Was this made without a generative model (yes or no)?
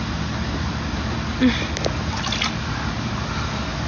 yes